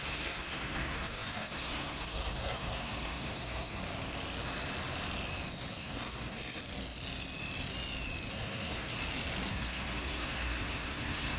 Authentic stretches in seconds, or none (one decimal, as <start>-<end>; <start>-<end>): 3.8-5.7; 6.6-8.3; 9.0-9.5